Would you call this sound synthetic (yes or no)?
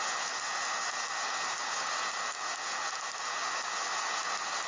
no